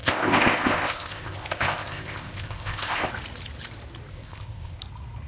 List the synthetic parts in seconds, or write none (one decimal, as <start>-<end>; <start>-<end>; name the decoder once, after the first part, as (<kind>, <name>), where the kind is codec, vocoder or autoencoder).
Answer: 0.0-3.1 (codec, ZipCodec); 4.1-4.8